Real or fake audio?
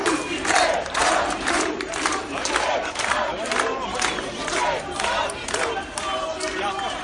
fake